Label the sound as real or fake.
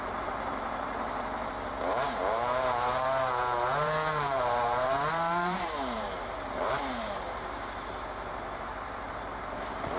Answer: fake